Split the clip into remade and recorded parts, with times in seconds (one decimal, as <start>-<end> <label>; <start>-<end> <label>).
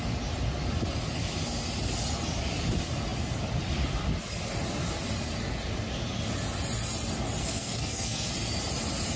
0.0-7.4 recorded; 7.4-8.3 remade; 8.3-9.2 recorded